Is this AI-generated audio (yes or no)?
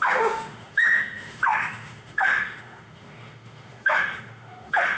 yes